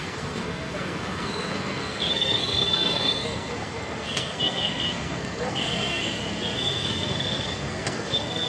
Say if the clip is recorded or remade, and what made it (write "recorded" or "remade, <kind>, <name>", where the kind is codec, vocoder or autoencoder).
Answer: remade, codec, SNAC